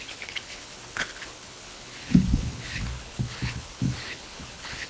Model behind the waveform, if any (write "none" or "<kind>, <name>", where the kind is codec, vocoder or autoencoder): codec, HILCodec